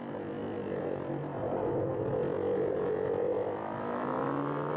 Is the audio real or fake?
real